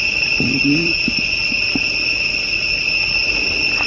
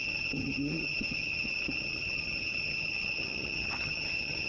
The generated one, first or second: second